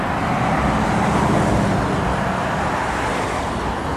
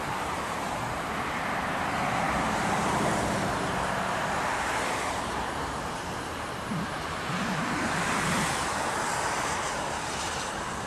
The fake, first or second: second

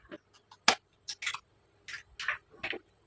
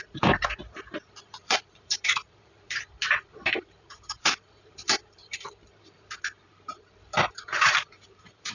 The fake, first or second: second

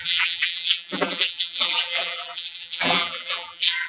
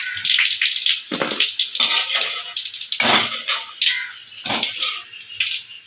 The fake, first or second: first